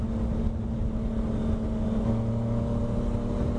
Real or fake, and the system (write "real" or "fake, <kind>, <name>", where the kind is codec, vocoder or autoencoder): real